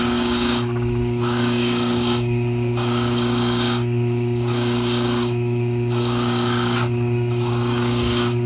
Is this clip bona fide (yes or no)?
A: no